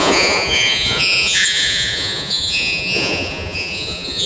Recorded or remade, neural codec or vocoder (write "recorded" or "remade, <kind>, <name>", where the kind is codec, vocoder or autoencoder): remade, vocoder, Vocos